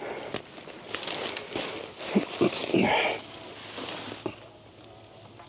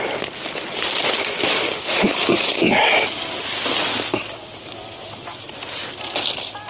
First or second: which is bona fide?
first